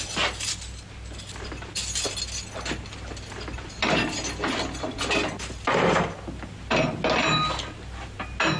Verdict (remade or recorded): recorded